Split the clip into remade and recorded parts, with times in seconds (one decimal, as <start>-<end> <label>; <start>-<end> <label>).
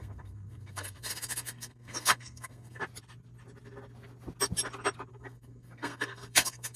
0.0-2.8 remade; 2.8-5.1 recorded; 5.1-6.8 remade